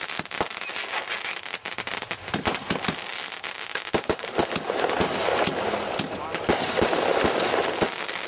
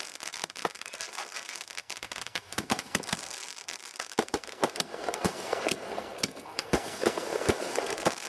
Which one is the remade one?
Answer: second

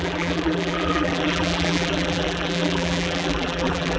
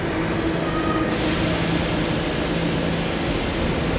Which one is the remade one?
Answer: first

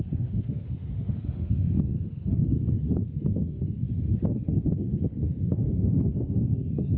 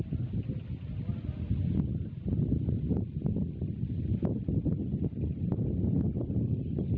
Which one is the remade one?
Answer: first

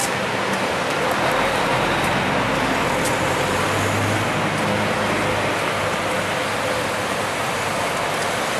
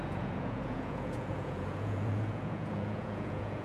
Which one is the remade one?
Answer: second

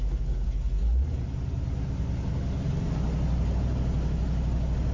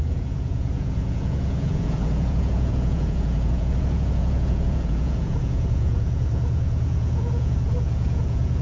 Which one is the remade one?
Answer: second